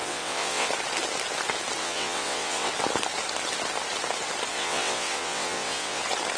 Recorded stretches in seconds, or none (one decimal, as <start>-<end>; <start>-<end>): 0.7-1.8; 2.7-4.5; 6.0-6.4